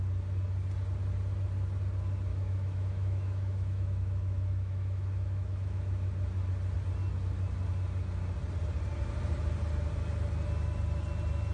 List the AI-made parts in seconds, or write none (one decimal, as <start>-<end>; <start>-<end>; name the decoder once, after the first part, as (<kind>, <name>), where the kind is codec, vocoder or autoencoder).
2.3-6.1 (autoencoder, DAC-VAE)